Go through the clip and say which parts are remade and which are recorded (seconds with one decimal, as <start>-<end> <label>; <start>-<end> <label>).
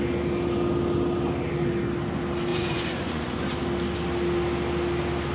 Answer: 0.0-2.5 recorded; 2.5-3.4 remade; 3.4-5.3 recorded